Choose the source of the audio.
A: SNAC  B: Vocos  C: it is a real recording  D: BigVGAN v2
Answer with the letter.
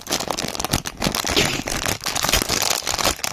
C